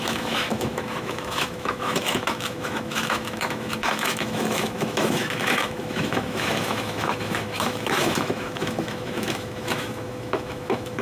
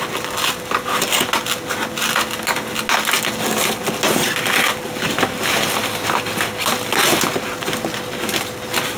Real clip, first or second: second